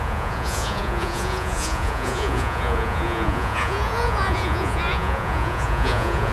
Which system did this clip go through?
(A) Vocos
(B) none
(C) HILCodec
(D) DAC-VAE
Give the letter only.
A